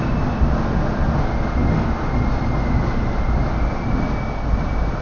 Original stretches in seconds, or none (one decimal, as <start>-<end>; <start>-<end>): 0.0-5.0